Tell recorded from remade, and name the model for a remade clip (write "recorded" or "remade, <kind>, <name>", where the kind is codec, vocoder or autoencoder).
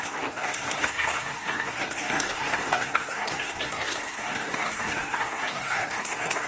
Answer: remade, codec, SNAC